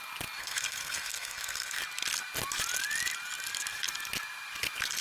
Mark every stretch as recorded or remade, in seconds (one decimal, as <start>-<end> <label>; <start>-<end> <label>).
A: 0.0-0.4 recorded; 0.4-1.8 remade; 1.8-5.0 recorded